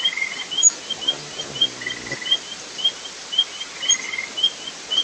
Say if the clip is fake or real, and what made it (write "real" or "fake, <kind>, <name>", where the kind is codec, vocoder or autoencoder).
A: real